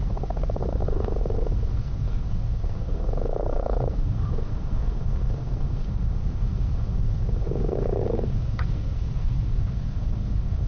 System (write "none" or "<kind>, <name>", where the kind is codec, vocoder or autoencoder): codec, SNAC